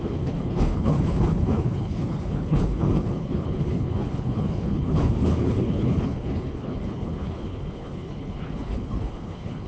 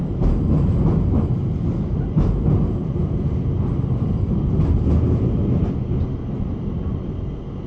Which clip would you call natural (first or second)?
second